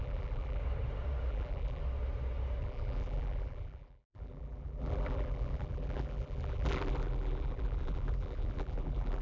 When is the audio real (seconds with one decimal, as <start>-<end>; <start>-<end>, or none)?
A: 0.6-1.3; 1.8-2.6

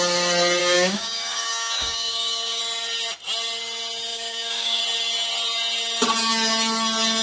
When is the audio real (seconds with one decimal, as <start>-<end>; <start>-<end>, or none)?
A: 0.0-0.6; 2.6-4.1; 4.8-7.2

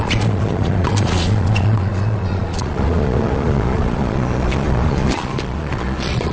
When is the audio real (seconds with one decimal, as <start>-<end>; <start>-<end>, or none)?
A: none

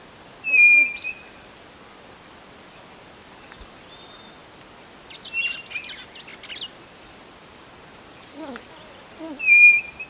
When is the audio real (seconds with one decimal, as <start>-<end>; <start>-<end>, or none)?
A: 0.0-10.1

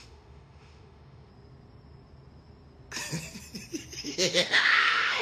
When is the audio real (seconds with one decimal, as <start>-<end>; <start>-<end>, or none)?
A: 1.3-4.0

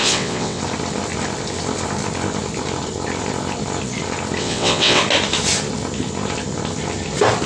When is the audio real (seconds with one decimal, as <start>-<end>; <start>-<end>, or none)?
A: 0.6-4.4; 5.0-7.5

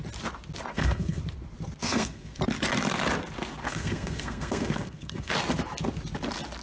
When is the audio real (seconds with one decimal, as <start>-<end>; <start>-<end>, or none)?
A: 0.0-0.7; 1.2-1.8; 2.4-3.6; 5.3-6.6

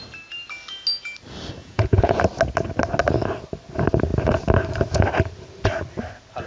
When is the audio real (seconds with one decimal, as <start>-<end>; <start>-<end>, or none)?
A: 0.0-1.6; 2.2-6.5